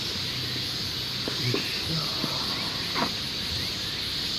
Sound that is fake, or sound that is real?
real